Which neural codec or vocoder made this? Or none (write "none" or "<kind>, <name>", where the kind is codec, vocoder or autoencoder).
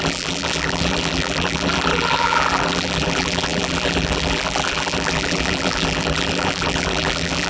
vocoder, BigVGAN v2